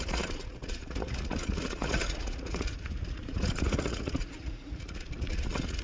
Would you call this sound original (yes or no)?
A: no